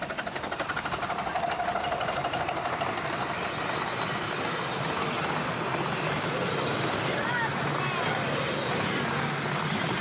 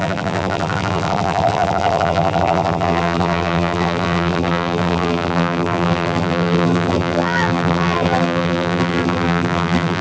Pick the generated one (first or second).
second